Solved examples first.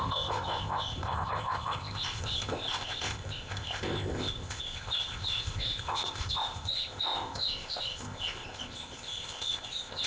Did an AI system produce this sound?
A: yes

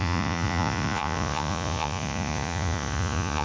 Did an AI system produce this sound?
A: yes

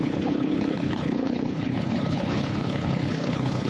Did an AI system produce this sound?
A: yes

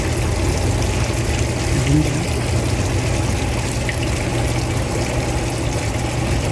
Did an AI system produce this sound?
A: no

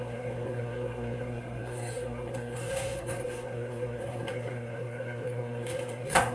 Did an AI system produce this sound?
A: yes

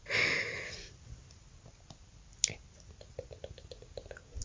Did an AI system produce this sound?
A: no